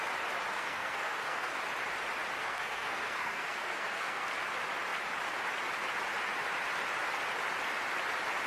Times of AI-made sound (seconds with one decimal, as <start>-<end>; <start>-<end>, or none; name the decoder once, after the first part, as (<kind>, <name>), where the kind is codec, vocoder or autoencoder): 0.5-1.6 (codec, SNAC); 2.4-4.3